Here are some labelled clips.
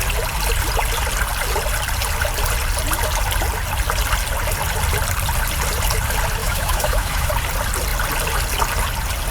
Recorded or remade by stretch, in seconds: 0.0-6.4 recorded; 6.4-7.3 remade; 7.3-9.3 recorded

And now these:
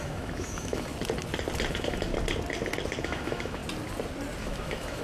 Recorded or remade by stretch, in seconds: 0.0-0.9 remade; 0.9-1.7 recorded; 1.7-2.1 remade; 2.1-3.0 recorded; 3.0-3.6 remade; 3.6-4.4 recorded; 4.4-5.0 remade

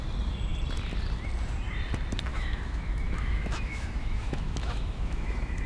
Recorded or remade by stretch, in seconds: 0.0-2.3 recorded; 2.3-5.7 remade

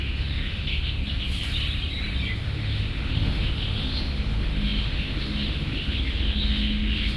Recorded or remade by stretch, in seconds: 0.0-1.0 remade; 1.0-2.4 recorded; 2.4-7.2 remade

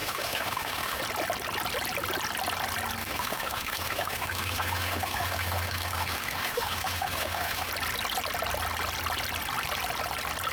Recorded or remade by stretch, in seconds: 0.0-1.0 remade; 1.0-3.0 recorded; 3.0-7.7 remade; 7.7-10.5 recorded

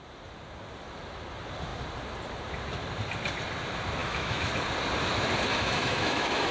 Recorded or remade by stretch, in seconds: 0.0-4.0 recorded; 4.0-4.5 remade; 4.5-5.5 recorded; 5.5-6.5 remade

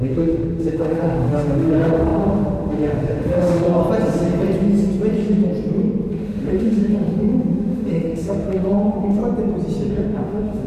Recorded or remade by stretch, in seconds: 0.0-3.8 remade; 3.8-6.1 recorded; 6.1-9.2 remade; 9.2-9.9 recorded; 9.9-10.7 remade

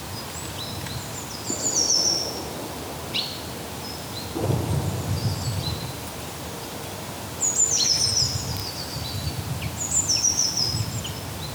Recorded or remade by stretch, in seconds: 0.0-11.5 recorded